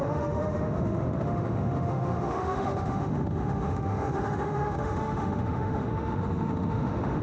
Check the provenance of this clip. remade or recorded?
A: remade